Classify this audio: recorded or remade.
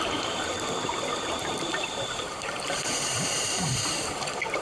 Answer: remade